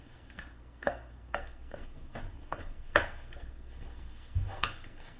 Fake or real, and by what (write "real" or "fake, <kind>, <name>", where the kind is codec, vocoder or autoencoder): fake, codec, SNAC